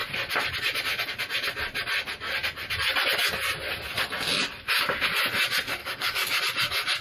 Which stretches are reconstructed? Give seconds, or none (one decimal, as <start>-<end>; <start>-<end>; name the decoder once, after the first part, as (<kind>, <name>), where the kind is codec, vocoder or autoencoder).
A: 5.8-6.4 (codec, DAC)